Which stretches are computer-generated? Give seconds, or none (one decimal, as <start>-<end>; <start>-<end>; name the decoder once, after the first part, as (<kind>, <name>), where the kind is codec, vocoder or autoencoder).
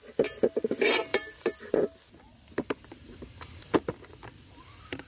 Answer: 1.1-1.7 (vocoder, BigVGAN v2); 2.3-5.1